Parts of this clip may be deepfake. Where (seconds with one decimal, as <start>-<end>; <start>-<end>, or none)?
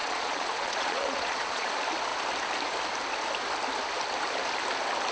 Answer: 0.0-1.7